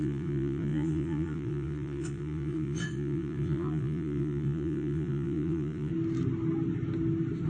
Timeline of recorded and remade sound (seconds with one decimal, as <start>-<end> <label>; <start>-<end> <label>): 0.0-5.9 remade; 5.9-7.5 recorded